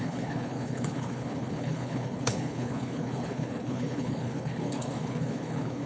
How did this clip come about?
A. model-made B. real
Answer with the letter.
A